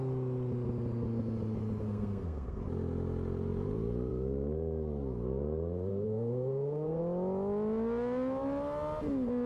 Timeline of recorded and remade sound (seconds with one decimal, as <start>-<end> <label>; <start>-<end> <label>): 0.0-1.8 recorded; 1.8-2.6 remade; 2.6-5.9 recorded; 5.9-7.0 remade; 7.0-9.5 recorded